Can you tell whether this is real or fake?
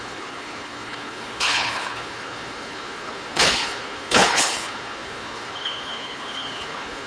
fake